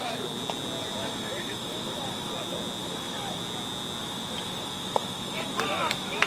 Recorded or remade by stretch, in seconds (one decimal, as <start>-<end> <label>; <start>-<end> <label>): 0.0-1.0 recorded; 1.0-2.3 remade; 2.3-2.8 recorded; 2.8-3.4 remade; 3.4-4.0 recorded; 4.0-6.3 remade

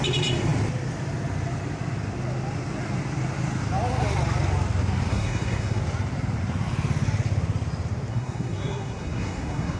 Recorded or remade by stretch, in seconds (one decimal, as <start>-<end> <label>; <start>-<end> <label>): 0.0-5.1 recorded; 5.1-5.8 remade; 5.8-8.1 recorded; 8.1-9.8 remade

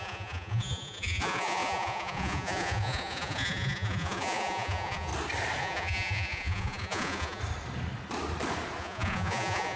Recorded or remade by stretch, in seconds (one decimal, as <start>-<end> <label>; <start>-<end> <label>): 0.0-5.1 remade; 5.1-5.6 recorded; 5.6-7.4 remade; 7.4-8.8 recorded; 8.8-9.8 remade

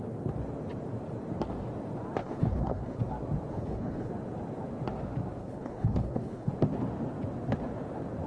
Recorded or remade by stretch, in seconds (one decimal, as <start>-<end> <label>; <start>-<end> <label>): 0.0-2.2 recorded; 2.2-3.0 remade; 3.0-3.5 recorded; 3.5-4.1 remade; 4.1-5.4 recorded; 5.4-6.5 remade; 6.5-8.3 recorded

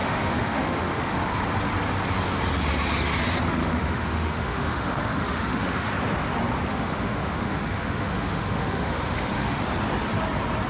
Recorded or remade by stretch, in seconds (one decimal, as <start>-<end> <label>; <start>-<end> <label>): 0.0-1.2 remade; 1.2-3.6 recorded; 3.6-5.9 remade; 5.9-6.7 recorded; 6.7-9.6 remade; 9.6-10.7 recorded

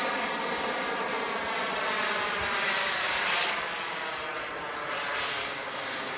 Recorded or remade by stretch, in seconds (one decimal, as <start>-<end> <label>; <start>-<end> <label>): 0.0-2.8 recorded; 2.8-4.1 remade; 4.1-5.4 recorded; 5.4-6.2 remade

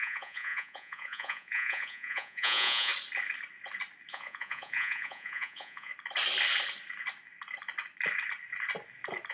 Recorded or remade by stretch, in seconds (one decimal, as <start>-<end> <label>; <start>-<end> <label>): 0.0-2.9 remade; 2.9-4.1 recorded; 4.1-5.9 remade; 5.9-9.3 recorded